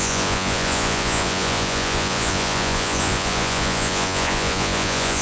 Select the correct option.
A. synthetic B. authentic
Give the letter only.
A